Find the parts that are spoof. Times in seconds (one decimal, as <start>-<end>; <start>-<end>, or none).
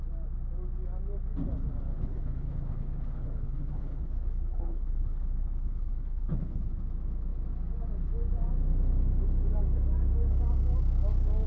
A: 1.9-6.7